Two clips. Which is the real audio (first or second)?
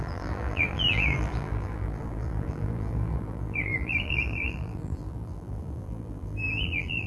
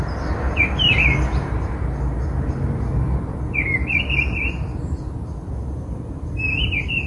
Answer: second